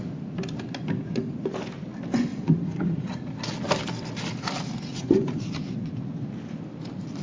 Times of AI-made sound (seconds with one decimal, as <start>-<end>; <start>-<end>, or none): 2.3-3.2; 4.9-5.5